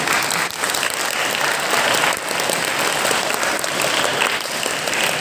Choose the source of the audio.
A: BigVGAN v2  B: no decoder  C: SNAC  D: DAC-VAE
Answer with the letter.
B